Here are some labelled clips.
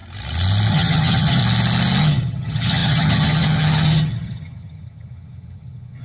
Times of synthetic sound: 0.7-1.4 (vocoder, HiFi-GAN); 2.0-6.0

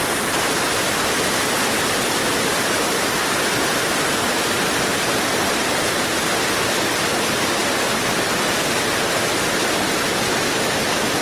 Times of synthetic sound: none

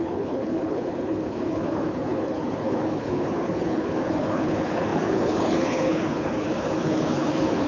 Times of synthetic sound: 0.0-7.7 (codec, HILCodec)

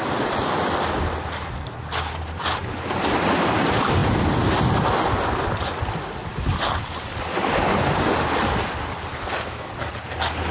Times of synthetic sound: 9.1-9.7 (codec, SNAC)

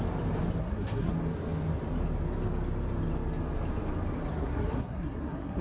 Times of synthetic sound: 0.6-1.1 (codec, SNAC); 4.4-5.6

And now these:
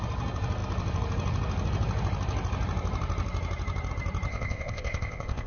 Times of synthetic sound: 4.3-5.5 (codec, ZipCodec)

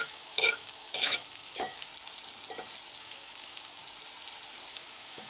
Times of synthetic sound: 0.0-1.9 (autoencoder, DAC-VAE); 3.0-3.8; 4.7-5.3

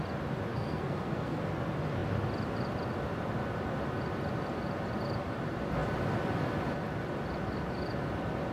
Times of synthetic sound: 0.5-1.4 (codec, SNAC)